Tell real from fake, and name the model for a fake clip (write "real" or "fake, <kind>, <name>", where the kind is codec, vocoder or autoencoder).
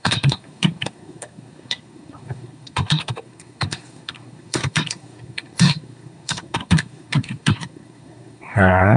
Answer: fake, codec, SNAC